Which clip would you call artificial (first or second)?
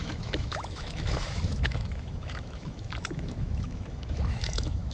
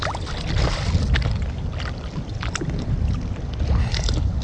first